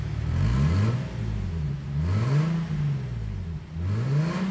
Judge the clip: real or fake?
real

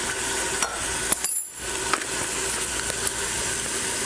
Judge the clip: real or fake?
real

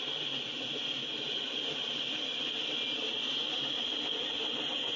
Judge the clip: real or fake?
real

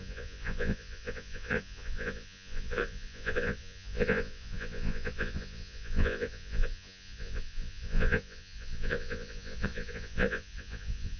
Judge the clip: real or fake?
fake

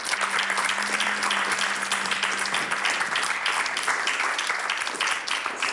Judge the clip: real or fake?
real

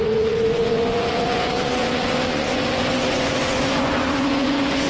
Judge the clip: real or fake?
fake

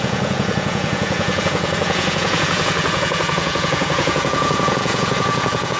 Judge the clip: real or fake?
fake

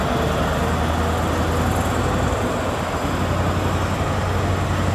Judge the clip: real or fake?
real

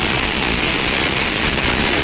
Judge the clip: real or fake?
fake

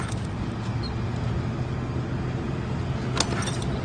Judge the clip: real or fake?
real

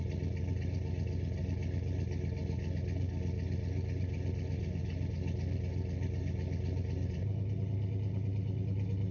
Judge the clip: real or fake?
real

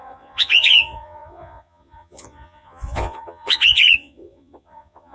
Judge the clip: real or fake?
fake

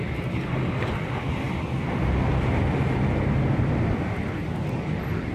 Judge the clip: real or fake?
real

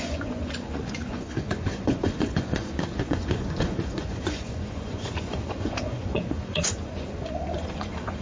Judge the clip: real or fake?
fake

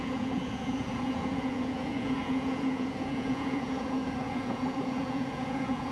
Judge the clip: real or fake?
fake